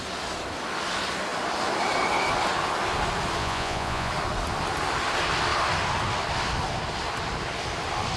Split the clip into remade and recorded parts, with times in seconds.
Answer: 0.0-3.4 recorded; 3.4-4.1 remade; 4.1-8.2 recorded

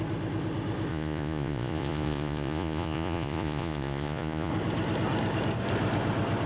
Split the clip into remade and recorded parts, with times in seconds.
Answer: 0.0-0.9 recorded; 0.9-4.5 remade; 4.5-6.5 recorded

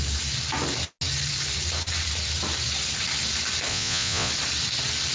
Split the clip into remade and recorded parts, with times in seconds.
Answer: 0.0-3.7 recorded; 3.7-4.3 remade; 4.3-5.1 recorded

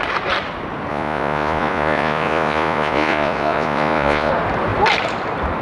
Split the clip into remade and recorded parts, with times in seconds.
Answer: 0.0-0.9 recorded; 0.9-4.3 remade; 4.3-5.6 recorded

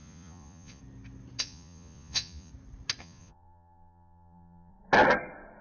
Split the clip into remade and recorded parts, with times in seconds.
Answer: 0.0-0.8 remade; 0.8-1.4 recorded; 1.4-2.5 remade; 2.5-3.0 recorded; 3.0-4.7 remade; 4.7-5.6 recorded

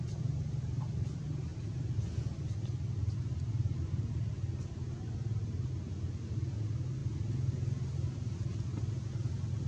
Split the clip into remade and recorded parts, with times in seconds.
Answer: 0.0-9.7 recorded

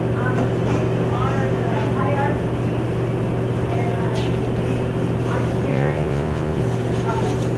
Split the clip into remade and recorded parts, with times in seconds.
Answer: 0.0-5.7 recorded; 5.7-6.6 remade; 6.6-7.6 recorded

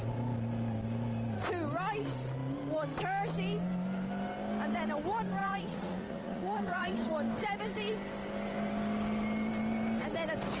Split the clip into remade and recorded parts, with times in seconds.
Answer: 0.0-5.4 recorded; 5.4-7.1 remade; 7.1-10.6 recorded